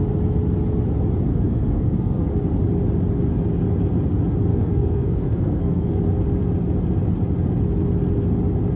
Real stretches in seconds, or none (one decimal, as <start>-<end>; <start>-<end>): 0.0-1.3; 2.3-4.5; 6.0-8.8